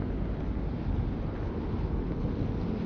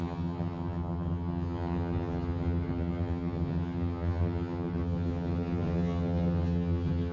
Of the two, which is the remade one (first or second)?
second